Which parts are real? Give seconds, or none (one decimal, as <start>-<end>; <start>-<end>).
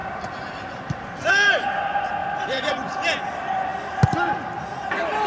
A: 1.3-2.2; 2.7-5.3